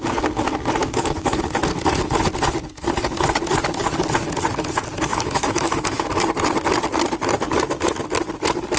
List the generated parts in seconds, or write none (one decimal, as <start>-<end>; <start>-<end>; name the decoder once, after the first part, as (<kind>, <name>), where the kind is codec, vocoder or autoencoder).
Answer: 0.8-1.4 (autoencoder, DAC-VAE); 5.1-6.1